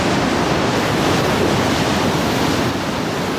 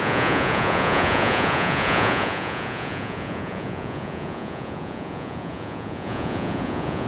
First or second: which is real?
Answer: first